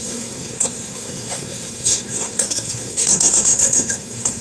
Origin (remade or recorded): remade